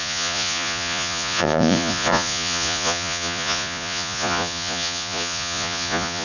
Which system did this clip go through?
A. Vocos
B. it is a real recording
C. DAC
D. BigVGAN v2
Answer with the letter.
A